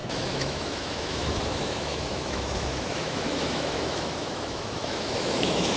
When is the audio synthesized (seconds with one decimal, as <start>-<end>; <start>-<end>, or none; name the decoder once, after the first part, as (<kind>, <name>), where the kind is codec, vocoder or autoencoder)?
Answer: 0.0-5.8 (autoencoder, DAC-VAE)